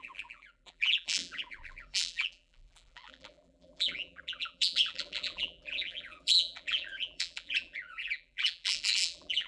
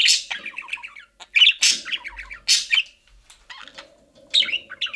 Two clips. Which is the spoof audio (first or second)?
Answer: first